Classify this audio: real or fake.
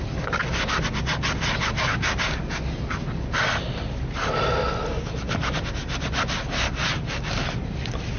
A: fake